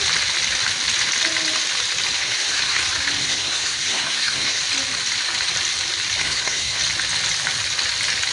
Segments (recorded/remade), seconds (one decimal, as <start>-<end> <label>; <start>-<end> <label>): 0.0-2.2 recorded; 2.2-2.8 remade; 2.8-3.2 recorded; 3.2-4.6 remade; 4.6-6.2 recorded; 6.2-6.8 remade; 6.8-8.3 recorded